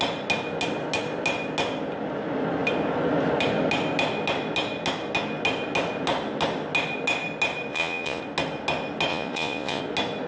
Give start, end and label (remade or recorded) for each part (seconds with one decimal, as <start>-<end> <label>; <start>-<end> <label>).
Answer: 0.0-7.7 recorded; 7.7-8.2 remade; 8.2-9.1 recorded; 9.1-9.8 remade; 9.8-10.3 recorded